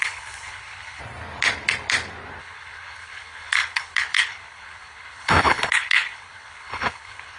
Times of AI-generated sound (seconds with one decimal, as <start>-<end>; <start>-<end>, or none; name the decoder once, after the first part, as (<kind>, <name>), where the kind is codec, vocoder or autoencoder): 0.0-1.0 (codec, HILCodec); 2.4-7.4